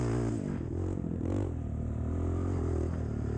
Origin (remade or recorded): recorded